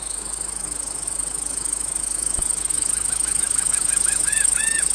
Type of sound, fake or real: fake